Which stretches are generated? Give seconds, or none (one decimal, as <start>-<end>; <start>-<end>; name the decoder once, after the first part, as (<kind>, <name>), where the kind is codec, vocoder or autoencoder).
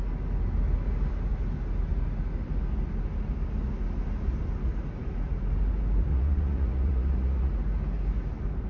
6.1-7.5 (vocoder, Vocos)